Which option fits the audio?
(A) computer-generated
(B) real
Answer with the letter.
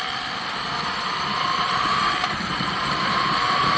B